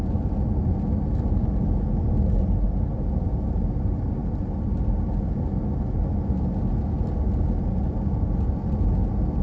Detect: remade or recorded recorded